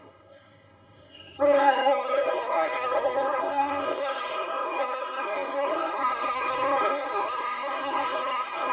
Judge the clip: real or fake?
fake